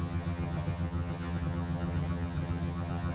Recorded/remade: remade